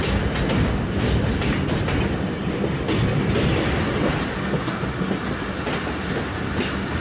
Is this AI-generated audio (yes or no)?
no